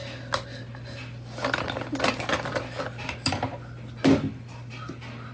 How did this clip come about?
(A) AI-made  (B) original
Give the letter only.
B